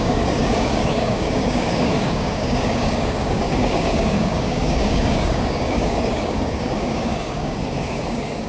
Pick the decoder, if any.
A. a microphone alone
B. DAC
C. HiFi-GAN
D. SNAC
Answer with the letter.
B